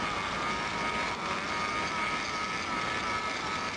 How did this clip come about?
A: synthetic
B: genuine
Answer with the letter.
B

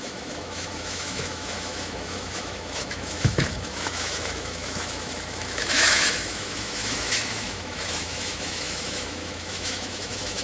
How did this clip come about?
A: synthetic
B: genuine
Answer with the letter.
A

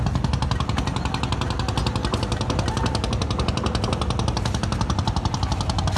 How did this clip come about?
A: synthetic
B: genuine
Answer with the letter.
B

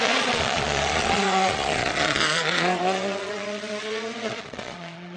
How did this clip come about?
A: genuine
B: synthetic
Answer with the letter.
B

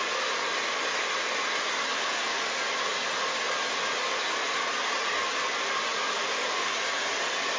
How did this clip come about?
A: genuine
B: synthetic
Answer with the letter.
A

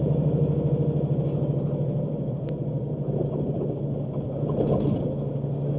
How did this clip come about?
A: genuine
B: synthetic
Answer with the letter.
A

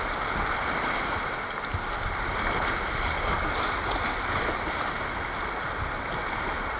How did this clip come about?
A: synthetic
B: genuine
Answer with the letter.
B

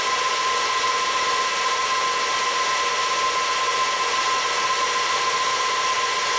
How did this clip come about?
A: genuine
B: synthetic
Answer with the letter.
A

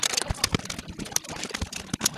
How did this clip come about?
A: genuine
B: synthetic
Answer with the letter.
B